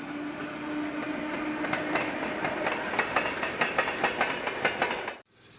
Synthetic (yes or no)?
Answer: no